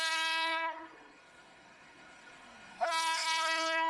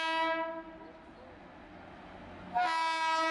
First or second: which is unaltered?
second